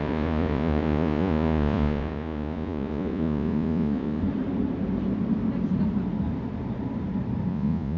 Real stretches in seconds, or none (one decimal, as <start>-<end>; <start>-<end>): 4.2-7.5